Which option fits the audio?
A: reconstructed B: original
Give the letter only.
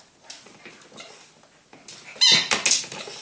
B